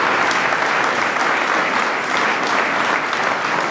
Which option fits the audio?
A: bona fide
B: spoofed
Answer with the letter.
A